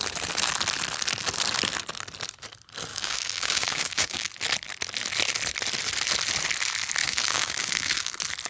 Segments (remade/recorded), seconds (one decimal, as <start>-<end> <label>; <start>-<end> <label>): 0.0-2.9 recorded; 2.9-4.3 remade; 4.3-7.0 recorded; 7.0-8.1 remade; 8.1-8.5 recorded